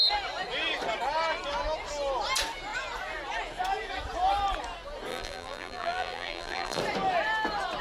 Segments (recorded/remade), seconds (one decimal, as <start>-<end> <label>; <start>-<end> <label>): 0.0-5.1 recorded; 5.1-6.8 remade; 6.8-7.8 recorded